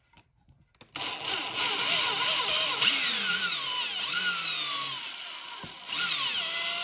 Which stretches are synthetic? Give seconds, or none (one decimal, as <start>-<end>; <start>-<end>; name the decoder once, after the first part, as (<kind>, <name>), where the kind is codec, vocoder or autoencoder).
none